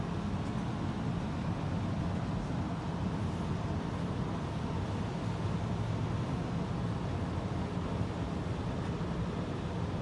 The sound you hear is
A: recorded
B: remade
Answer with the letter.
A